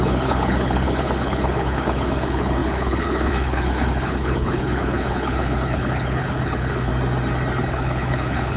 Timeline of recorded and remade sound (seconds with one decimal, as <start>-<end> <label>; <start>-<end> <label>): 0.0-6.9 remade; 6.9-7.7 recorded; 7.7-8.6 remade